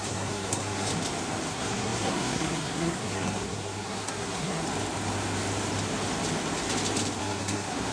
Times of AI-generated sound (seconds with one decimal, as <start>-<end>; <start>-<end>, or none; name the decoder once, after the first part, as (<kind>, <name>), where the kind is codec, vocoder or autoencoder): 0.0-0.9 (codec, SNAC); 1.5-4.6; 7.2-7.9